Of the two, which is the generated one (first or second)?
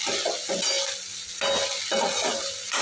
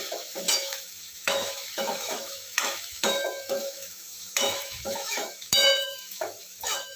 second